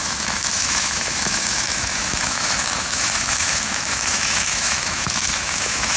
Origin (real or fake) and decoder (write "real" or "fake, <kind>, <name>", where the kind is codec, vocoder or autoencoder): fake, autoencoder, DAC-VAE